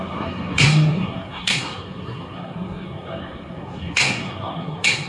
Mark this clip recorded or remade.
remade